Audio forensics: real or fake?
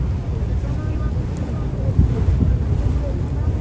real